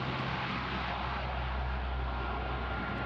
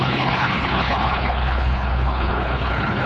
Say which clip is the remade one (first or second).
second